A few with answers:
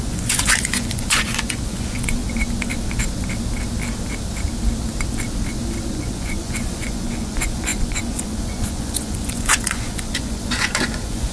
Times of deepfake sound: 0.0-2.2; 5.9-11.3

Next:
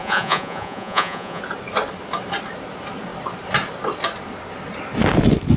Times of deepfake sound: 0.0-1.4

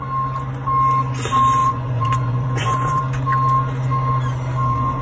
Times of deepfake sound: 1.6-3.0

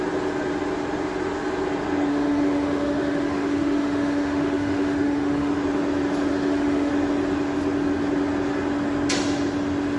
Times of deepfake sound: 2.1-5.5; 6.3-6.9

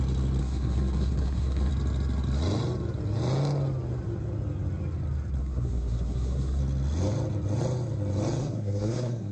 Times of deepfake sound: 0.4-1.7; 5.4-6.6; 8.4-9.3

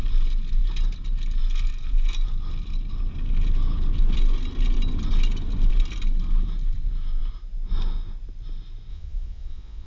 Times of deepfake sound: 8.9-9.9

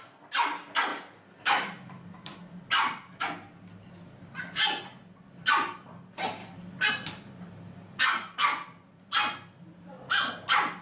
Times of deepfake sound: 0.9-2.6; 6.4-6.9